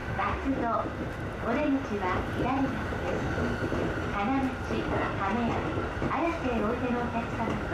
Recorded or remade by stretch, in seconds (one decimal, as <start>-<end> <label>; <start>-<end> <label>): 0.0-0.5 remade; 0.5-7.7 recorded